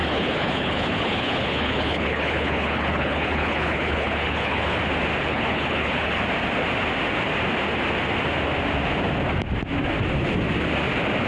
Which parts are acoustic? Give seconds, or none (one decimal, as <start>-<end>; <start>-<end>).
4.8-5.3; 6.2-11.3